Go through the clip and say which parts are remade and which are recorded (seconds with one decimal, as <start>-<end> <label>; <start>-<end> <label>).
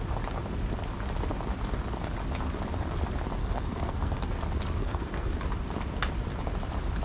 0.0-3.4 recorded; 3.4-4.3 remade; 4.3-4.8 recorded; 4.8-5.3 remade; 5.3-7.0 recorded